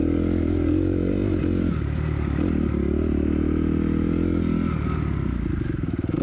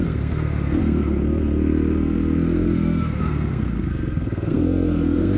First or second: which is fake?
second